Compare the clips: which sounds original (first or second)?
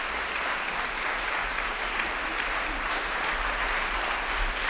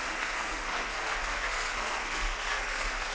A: first